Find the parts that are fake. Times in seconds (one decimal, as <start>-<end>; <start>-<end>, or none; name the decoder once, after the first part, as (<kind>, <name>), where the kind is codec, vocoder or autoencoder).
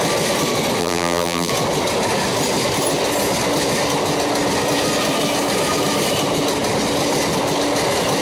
0.8-1.5 (vocoder, BigVGAN v2)